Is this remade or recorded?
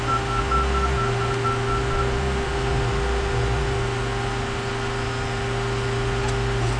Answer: recorded